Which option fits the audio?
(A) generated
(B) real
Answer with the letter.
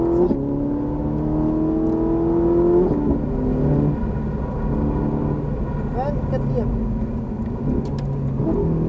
B